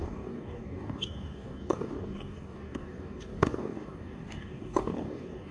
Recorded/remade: remade